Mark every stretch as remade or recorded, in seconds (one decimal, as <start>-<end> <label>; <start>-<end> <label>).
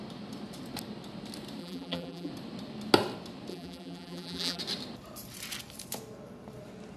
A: 0.0-1.6 recorded; 1.6-2.3 remade; 2.3-3.5 recorded; 3.5-4.6 remade; 4.6-7.0 recorded